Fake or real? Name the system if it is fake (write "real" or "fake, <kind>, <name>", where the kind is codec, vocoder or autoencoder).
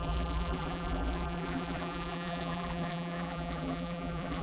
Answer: fake, vocoder, BigVGAN v2